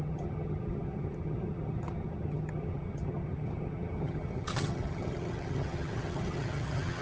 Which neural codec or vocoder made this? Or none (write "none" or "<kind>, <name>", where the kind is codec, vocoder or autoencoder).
vocoder, HiFi-GAN